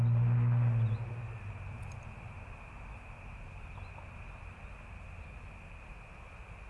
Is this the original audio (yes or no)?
yes